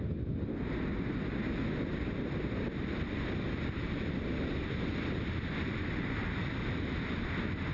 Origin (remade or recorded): recorded